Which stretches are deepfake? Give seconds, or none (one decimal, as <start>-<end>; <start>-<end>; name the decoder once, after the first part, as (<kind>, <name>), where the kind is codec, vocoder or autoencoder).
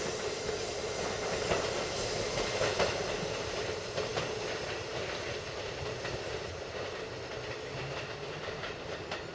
none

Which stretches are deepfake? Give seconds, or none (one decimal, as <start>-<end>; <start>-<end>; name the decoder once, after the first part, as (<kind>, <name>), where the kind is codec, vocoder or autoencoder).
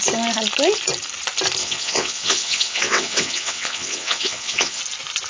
1.6-4.8 (vocoder, WaveNeXt)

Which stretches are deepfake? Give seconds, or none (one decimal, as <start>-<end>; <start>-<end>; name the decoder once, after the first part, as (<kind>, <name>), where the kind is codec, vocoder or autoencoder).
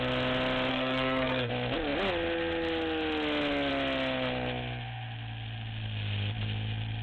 0.7-1.5 (codec, SNAC)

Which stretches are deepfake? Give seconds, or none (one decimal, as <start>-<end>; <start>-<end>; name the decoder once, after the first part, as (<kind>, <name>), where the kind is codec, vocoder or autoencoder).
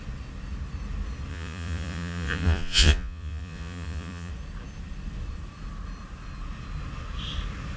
1.3-4.3 (vocoder, Vocos)